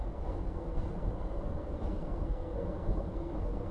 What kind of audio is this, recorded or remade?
remade